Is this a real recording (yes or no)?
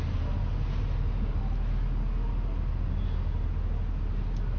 yes